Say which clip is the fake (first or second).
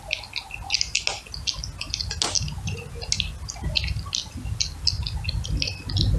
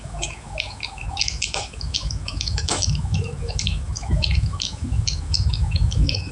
second